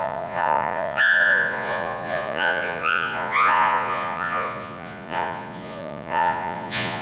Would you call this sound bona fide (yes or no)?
no